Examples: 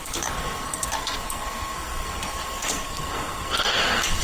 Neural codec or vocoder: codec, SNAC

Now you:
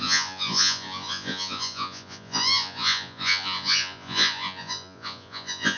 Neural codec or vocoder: vocoder, Vocos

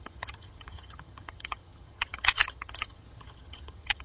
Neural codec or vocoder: vocoder, HiFi-GAN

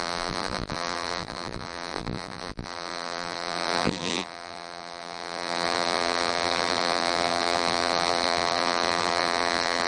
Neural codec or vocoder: vocoder, BigVGAN v2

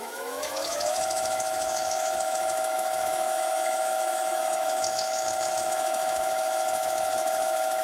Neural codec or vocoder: autoencoder, DAC-VAE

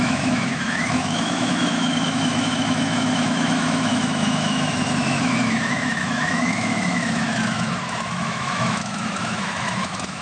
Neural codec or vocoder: autoencoder, DAC-VAE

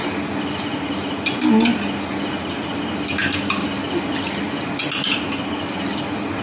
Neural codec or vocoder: none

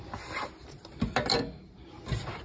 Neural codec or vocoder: none